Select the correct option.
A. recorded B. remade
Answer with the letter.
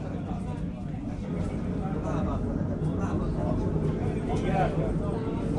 A